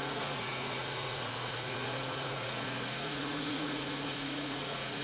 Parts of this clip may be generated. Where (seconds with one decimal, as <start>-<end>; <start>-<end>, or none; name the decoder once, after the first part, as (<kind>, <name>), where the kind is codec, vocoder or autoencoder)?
0.0-5.0 (vocoder, Vocos)